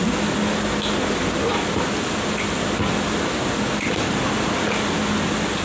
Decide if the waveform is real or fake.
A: real